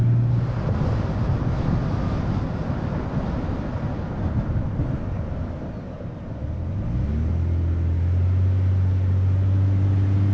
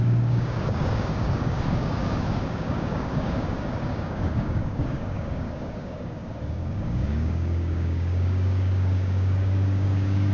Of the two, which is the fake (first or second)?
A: second